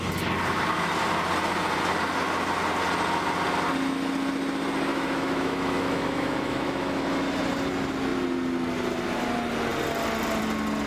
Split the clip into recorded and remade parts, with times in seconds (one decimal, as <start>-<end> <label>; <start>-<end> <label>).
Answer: 0.0-4.9 recorded; 4.9-7.0 remade; 7.0-10.9 recorded